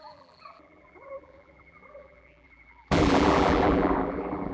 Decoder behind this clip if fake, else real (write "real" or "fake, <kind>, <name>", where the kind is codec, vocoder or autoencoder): fake, vocoder, BigVGAN v2